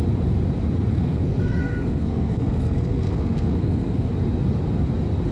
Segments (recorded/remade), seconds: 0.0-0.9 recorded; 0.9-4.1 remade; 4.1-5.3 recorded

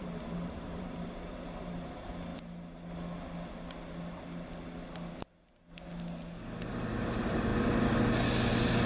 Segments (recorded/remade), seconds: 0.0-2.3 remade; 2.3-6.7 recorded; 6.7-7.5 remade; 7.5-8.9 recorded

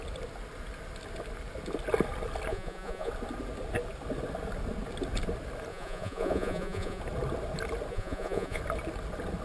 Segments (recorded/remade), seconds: 0.0-2.5 recorded; 2.5-3.1 remade; 3.1-5.7 recorded; 5.7-7.0 remade; 7.0-7.9 recorded; 7.9-8.6 remade; 8.6-9.4 recorded

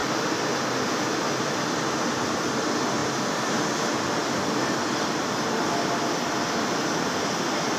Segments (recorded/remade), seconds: 0.0-7.8 recorded